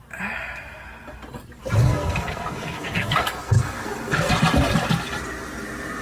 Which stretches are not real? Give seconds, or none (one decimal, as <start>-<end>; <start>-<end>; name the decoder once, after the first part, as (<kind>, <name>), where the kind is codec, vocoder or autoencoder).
1.8-4.3 (codec, SNAC)